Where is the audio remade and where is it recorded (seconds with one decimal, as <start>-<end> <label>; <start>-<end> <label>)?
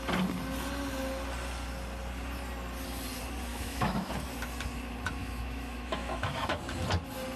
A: 0.0-3.5 recorded; 3.5-4.1 remade; 4.1-5.2 recorded; 5.2-6.6 remade; 6.6-7.4 recorded